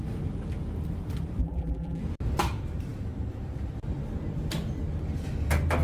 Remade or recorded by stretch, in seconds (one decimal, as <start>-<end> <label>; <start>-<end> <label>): 0.0-1.4 recorded; 1.4-2.0 remade; 2.0-5.8 recorded